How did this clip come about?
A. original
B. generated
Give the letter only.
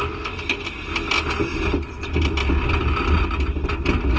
A